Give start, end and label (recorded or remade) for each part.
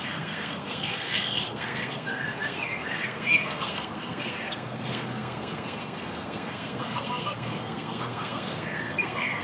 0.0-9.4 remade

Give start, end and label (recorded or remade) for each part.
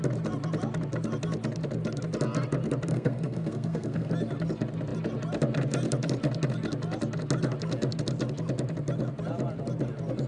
0.0-2.9 recorded; 2.9-4.1 remade; 4.1-10.3 recorded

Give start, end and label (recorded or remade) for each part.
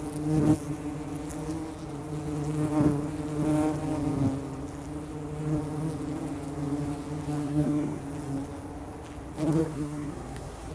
0.0-7.4 recorded; 7.4-8.0 remade; 8.0-9.6 recorded; 9.6-10.7 remade